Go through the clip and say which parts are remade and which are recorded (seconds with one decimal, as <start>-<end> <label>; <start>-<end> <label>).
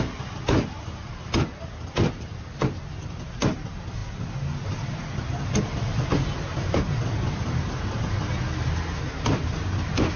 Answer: 0.0-10.2 recorded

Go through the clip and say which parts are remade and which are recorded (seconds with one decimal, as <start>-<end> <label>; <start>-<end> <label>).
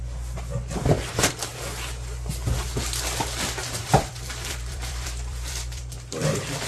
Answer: 0.0-3.6 recorded; 3.6-6.7 remade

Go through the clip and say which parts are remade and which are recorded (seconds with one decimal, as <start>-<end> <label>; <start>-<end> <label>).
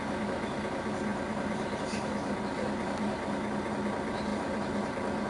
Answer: 0.0-1.1 recorded; 1.1-3.7 remade; 3.7-5.3 recorded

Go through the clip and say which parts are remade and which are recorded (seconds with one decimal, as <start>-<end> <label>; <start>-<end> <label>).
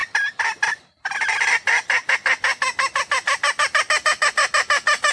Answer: 0.0-5.1 recorded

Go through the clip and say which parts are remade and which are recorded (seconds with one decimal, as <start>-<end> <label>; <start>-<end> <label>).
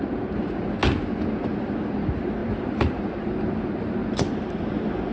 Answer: 0.0-5.1 recorded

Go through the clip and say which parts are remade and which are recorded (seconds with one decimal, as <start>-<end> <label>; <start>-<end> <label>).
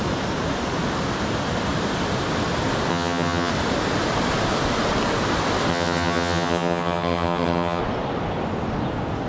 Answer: 0.0-2.9 recorded; 2.9-3.5 remade; 3.5-5.7 recorded; 5.7-7.8 remade; 7.8-9.3 recorded